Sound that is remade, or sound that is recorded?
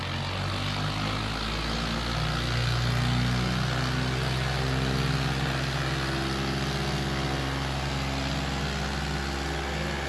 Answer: recorded